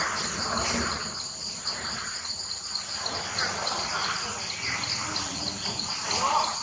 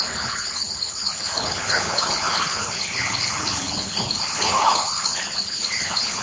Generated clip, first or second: second